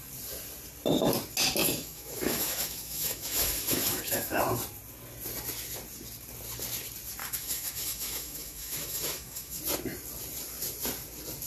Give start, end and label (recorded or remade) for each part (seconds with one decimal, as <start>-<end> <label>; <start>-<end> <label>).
0.0-1.6 recorded; 1.6-4.4 remade; 4.4-7.2 recorded; 7.2-9.6 remade; 9.6-11.5 recorded